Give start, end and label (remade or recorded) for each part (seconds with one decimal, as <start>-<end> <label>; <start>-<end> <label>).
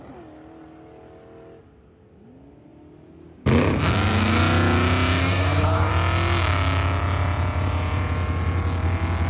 0.0-5.2 recorded; 5.2-5.9 remade; 5.9-9.3 recorded